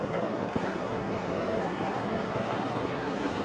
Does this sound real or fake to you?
fake